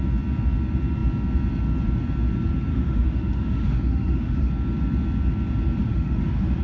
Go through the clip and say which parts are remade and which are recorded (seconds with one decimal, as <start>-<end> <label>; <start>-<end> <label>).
0.0-2.7 recorded; 2.7-4.5 remade; 4.5-5.8 recorded; 5.8-6.6 remade